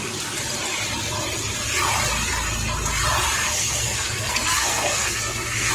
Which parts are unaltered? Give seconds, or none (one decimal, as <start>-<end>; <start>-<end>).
0.0-3.4